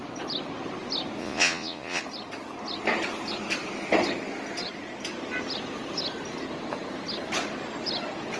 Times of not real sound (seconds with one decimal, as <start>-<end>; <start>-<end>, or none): 1.2-2.0